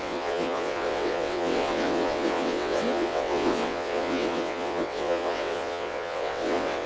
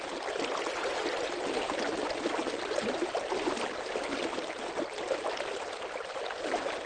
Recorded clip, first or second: second